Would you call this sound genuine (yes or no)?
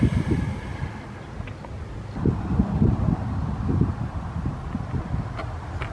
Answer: yes